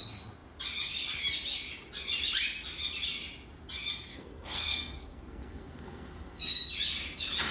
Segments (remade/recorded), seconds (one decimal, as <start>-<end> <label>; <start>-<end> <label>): 0.0-4.1 recorded; 4.1-6.5 remade; 6.5-7.5 recorded